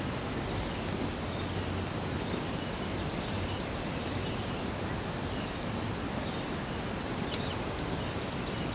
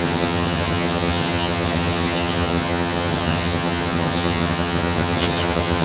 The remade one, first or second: second